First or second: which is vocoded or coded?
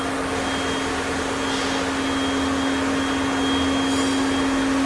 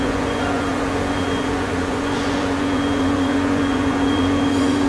second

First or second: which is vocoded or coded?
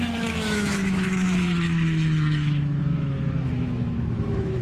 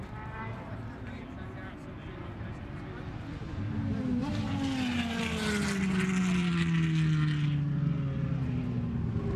first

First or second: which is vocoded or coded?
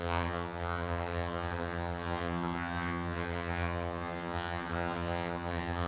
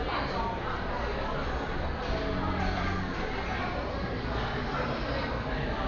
first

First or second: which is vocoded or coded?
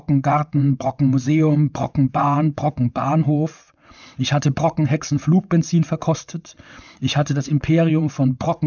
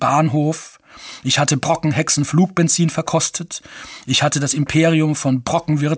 first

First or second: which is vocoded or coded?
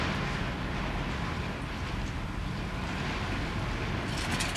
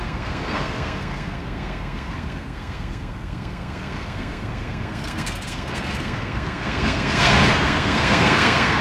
second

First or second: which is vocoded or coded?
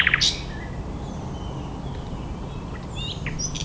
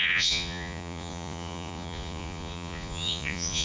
second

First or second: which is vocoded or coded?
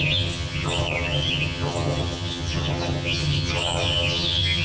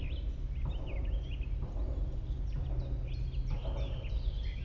first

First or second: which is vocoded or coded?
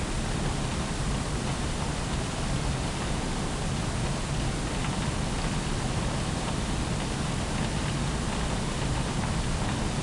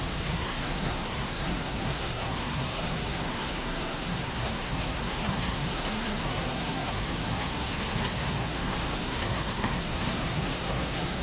second